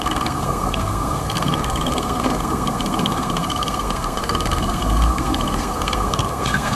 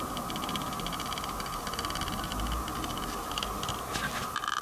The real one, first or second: second